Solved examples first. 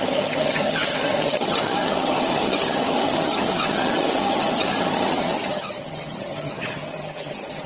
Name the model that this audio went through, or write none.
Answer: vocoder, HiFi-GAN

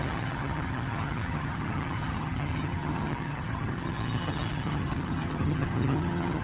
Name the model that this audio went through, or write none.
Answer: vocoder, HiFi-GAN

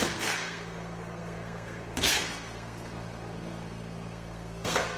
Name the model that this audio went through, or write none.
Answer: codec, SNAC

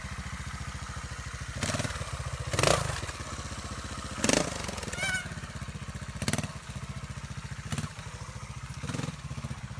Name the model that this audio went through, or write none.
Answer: none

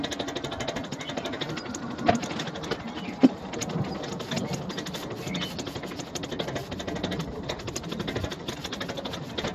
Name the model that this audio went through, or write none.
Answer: none